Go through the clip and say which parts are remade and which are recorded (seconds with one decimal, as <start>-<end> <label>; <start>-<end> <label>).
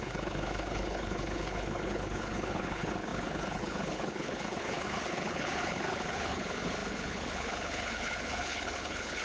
0.0-9.2 remade